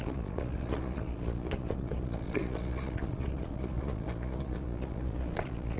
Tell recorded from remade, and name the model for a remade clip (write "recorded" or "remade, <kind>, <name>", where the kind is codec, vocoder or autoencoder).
remade, vocoder, Vocos